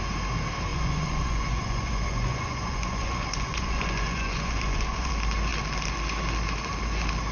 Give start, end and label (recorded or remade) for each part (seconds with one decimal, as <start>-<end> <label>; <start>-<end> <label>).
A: 0.0-0.7 recorded; 0.7-5.1 remade; 5.1-7.3 recorded